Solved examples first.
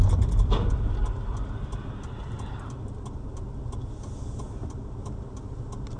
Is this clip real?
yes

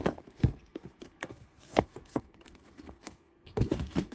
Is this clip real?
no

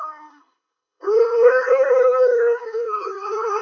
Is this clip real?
no